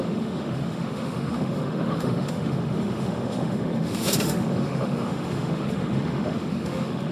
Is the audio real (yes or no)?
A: no